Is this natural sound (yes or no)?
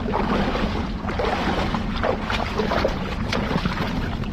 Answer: yes